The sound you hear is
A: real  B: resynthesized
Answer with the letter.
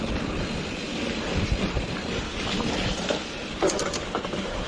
A